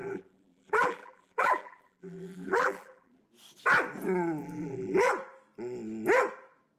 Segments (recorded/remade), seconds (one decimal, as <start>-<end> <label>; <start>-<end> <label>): 0.0-3.2 remade; 3.2-4.4 recorded; 4.4-5.1 remade; 5.1-6.8 recorded